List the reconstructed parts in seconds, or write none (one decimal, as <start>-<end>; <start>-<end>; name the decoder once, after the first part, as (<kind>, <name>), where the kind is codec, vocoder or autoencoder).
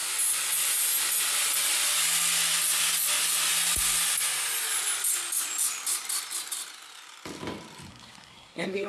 7.9-8.9 (codec, SNAC)